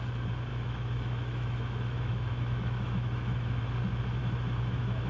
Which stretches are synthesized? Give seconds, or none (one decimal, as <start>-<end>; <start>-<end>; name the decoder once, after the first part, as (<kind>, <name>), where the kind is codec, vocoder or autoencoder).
0.5-3.6 (autoencoder, DAC-VAE); 4.2-5.1